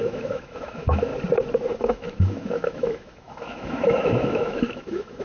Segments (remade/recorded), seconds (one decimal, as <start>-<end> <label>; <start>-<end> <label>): 0.0-1.1 remade; 1.1-1.8 recorded; 1.8-5.2 remade